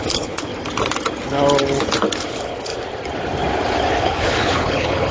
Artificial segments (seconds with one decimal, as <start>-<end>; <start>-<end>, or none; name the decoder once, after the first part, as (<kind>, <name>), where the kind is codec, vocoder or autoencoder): 0.0-0.5 (codec, HILCodec); 2.3-2.7; 4.0-5.1